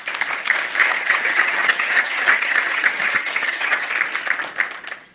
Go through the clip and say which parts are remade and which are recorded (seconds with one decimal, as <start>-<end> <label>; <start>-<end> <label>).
0.0-0.8 recorded; 0.8-3.9 remade; 3.9-5.1 recorded